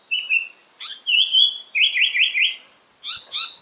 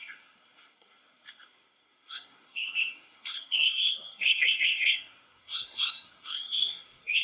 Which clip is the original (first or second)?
first